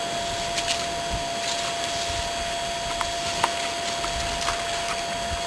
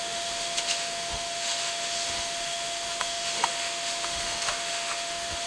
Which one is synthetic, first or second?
second